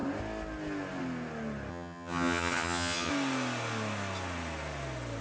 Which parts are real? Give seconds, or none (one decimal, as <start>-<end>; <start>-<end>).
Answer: 0.0-1.7; 3.1-5.2